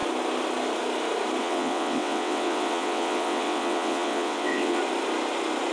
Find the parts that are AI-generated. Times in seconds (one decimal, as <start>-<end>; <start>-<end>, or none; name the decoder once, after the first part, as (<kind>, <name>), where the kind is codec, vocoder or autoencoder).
1.4-4.8 (vocoder, WaveNeXt)